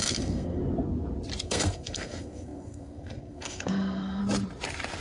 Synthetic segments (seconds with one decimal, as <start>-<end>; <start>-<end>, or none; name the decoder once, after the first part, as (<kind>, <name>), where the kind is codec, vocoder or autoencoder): 0.0-0.6 (codec, SNAC); 1.4-4.2